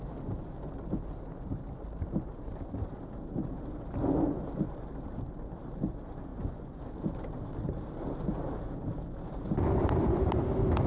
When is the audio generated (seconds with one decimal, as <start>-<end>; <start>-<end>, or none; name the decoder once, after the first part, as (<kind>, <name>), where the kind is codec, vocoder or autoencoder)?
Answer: 6.3-6.8 (vocoder, Vocos)